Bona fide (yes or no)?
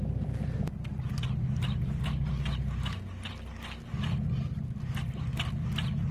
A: yes